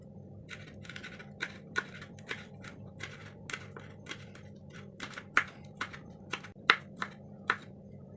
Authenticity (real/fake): real